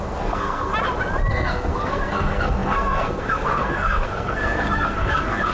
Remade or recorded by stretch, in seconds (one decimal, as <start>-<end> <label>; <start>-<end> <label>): 0.0-0.7 remade; 0.7-1.3 recorded; 1.3-5.5 remade